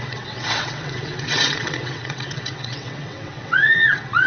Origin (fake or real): fake